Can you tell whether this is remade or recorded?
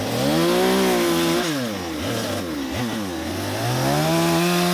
recorded